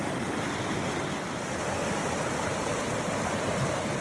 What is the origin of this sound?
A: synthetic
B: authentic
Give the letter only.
B